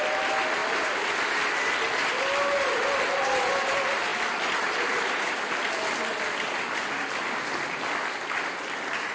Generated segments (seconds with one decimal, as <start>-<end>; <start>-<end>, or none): none

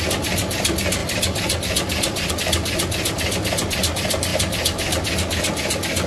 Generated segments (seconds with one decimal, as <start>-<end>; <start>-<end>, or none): none

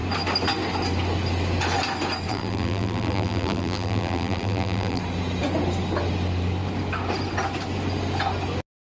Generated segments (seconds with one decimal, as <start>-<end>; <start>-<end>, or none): 2.3-5.0

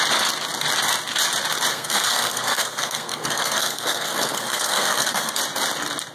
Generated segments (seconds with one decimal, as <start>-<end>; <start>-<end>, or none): 1.7-5.4